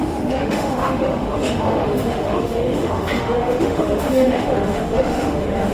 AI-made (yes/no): yes